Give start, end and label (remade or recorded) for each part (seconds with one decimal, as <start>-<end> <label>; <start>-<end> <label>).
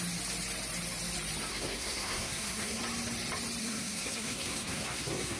0.0-1.5 recorded; 1.5-2.8 remade; 2.8-3.6 recorded; 3.6-5.4 remade